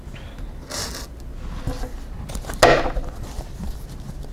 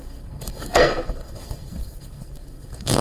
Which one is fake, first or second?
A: second